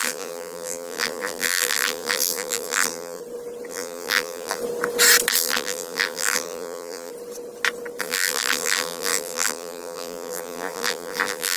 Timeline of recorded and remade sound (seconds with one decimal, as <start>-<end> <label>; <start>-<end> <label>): 0.0-3.2 remade; 3.2-3.7 recorded; 3.7-4.6 remade; 4.6-5.3 recorded; 5.3-7.1 remade; 7.1-8.0 recorded; 8.0-11.6 remade

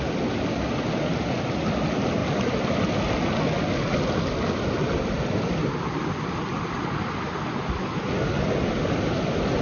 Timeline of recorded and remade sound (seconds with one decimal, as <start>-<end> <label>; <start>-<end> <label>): 0.0-9.6 recorded

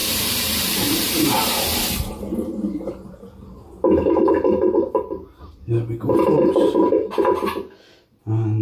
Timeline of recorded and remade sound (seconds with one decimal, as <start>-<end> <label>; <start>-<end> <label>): 0.0-1.3 remade; 1.3-8.6 recorded

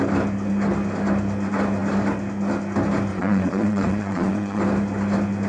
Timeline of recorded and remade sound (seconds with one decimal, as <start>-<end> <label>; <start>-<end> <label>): 0.0-3.1 recorded; 3.1-4.6 remade; 4.6-5.5 recorded

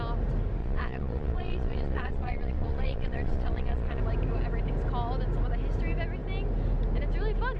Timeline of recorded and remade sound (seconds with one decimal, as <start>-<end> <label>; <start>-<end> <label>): 0.0-0.6 recorded; 0.6-4.0 remade; 4.0-7.6 recorded

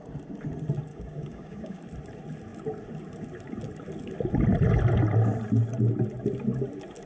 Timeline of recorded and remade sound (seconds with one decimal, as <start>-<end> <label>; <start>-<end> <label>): 0.0-0.9 recorded; 0.9-1.8 remade; 1.8-7.1 recorded

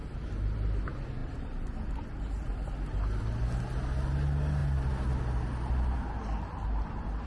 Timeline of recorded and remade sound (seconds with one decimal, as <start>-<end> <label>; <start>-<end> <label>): 0.0-7.3 recorded